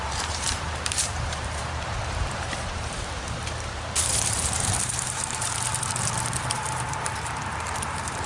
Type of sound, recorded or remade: remade